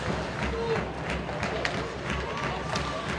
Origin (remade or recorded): recorded